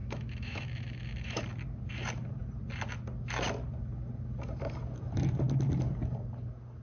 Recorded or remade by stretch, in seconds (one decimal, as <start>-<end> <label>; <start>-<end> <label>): 0.0-1.4 remade; 1.4-6.8 recorded